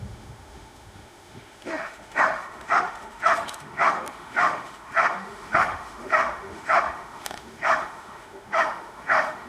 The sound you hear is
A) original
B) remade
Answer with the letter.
B